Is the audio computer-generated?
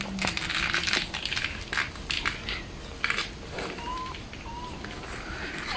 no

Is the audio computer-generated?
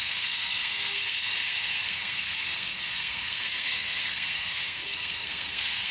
yes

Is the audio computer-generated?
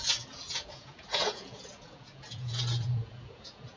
yes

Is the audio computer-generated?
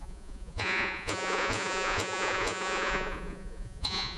yes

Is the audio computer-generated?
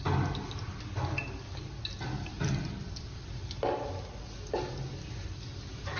no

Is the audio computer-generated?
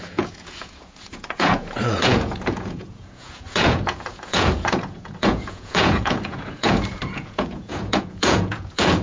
yes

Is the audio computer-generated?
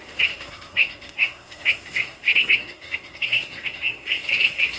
yes